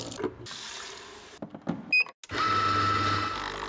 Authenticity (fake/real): real